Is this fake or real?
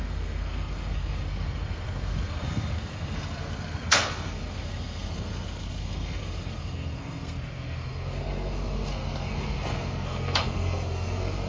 fake